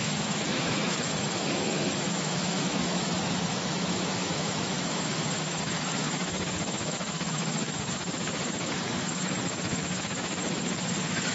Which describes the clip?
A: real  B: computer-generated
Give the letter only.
B